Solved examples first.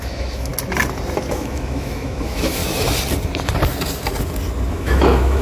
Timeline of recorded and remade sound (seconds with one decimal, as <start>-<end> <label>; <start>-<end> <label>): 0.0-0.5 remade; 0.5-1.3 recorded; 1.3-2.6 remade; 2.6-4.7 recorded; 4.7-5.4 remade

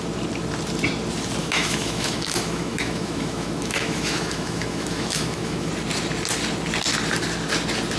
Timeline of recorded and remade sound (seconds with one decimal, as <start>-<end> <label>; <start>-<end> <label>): 0.0-1.4 recorded; 1.4-5.7 remade; 5.7-8.0 recorded

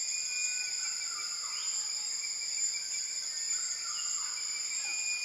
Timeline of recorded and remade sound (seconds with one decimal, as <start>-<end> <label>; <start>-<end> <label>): 0.0-5.2 recorded